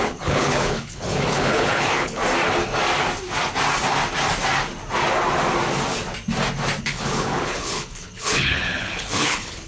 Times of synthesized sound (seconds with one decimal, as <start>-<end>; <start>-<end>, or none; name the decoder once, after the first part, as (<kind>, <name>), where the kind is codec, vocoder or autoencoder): 0.0-2.2 (codec, HILCodec); 6.8-9.7